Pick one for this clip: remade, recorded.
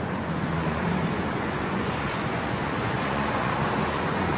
remade